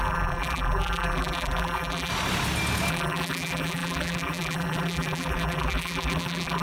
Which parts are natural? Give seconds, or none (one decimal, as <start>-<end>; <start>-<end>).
2.1-2.9